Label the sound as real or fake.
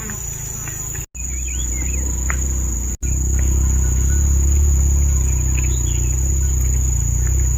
real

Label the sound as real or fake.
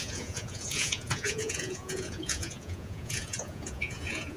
fake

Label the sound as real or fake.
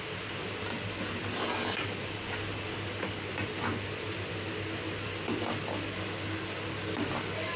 real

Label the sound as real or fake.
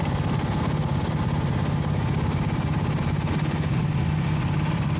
real